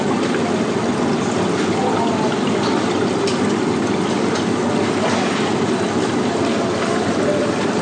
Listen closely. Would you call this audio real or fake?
real